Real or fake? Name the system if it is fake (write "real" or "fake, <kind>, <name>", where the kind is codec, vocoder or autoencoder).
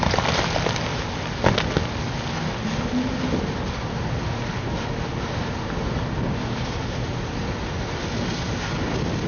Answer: real